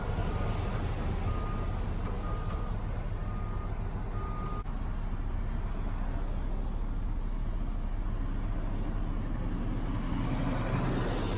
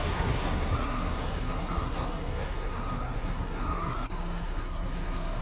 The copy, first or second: second